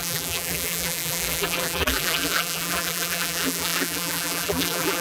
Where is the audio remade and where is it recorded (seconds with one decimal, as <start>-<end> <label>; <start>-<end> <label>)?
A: 0.0-5.0 remade